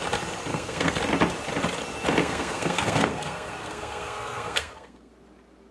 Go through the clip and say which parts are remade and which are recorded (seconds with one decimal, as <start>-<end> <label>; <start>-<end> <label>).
0.0-0.5 recorded; 0.5-1.0 remade; 1.0-2.2 recorded; 2.2-5.1 remade; 5.1-5.7 recorded